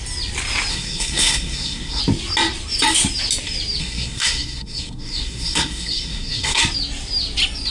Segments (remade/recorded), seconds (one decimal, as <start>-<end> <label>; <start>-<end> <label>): 0.0-0.7 recorded; 0.7-2.0 remade; 2.0-3.8 recorded; 3.8-6.6 remade; 6.6-7.7 recorded